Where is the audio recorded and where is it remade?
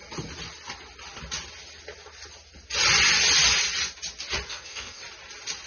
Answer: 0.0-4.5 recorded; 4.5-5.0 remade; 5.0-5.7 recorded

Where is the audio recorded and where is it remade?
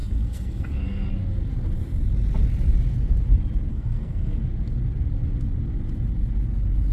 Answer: 0.0-1.1 remade; 1.1-3.7 recorded; 3.7-4.4 remade; 4.4-6.9 recorded